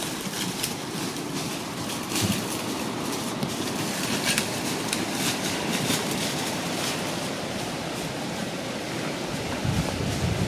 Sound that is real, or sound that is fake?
fake